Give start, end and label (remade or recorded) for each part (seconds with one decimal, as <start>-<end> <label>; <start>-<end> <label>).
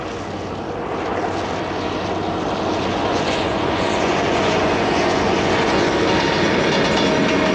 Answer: 0.0-2.9 recorded; 2.9-5.9 remade; 5.9-7.5 recorded